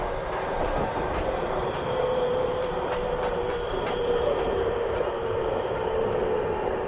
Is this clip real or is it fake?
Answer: fake